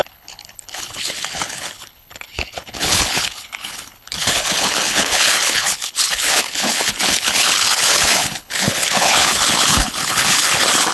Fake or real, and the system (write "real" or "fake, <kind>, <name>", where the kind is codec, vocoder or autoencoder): fake, codec, HILCodec